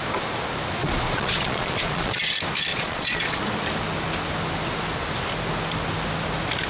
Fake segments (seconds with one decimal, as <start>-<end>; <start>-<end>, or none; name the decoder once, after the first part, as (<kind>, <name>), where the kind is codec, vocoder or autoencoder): 0.8-2.2 (vocoder, Vocos); 2.7-3.4

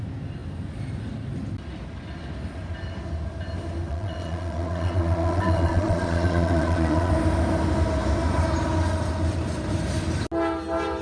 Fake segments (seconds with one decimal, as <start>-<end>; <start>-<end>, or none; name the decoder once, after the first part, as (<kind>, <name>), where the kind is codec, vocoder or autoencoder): 3.9-7.1 (vocoder, Vocos)

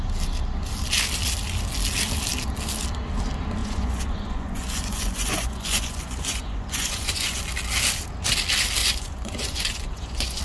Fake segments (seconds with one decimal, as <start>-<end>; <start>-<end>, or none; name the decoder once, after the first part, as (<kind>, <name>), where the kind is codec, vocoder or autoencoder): 3.6-7.4 (vocoder, Vocos); 8.8-10.4

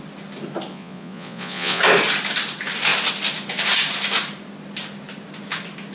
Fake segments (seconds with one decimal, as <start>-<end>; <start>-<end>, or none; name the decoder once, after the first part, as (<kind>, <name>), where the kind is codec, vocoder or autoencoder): 0.7-1.8 (vocoder, Vocos)

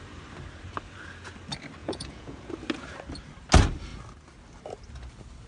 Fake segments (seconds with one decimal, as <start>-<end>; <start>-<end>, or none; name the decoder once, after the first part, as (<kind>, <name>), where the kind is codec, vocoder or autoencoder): 1.8-2.5 (vocoder, Vocos)

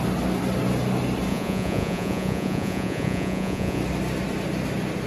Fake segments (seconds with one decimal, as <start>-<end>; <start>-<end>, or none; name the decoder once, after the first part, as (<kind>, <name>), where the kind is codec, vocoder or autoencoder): 1.3-3.8 (vocoder, Vocos)

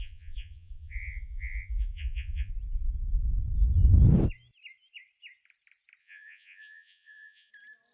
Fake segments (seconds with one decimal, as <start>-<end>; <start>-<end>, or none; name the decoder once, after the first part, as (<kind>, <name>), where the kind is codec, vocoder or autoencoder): 0.0-2.5 (vocoder, Vocos); 6.0-7.5

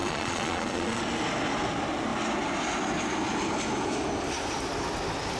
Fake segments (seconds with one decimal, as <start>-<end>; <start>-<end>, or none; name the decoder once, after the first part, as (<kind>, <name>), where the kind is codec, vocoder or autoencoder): 0.0-1.0 (vocoder, Vocos)